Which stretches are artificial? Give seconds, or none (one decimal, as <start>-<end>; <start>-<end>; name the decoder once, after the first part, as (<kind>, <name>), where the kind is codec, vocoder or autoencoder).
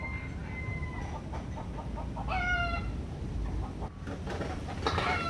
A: none